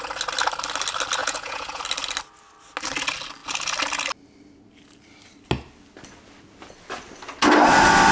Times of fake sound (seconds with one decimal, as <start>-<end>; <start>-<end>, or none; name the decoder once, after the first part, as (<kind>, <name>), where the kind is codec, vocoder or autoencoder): 1.2-1.8 (vocoder, Vocos)